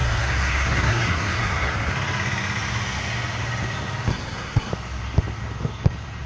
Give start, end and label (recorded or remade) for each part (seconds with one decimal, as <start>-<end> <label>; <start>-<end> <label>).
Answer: 0.0-1.9 remade; 1.9-4.1 recorded; 4.1-4.7 remade; 4.7-6.3 recorded